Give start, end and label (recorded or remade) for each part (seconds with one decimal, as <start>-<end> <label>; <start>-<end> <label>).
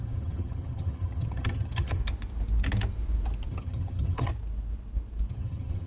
0.0-2.0 remade; 2.0-3.5 recorded; 3.5-4.3 remade; 4.3-5.3 recorded; 5.3-5.9 remade